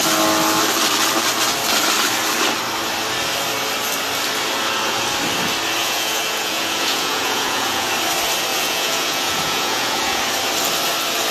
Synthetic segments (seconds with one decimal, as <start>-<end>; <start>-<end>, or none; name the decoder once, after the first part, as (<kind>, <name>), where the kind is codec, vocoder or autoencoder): 5.8-7.9 (vocoder, Vocos); 8.5-10.2